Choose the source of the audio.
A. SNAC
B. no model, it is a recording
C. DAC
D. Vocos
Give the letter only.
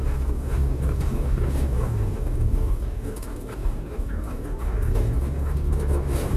C